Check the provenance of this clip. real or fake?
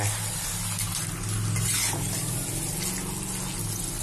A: real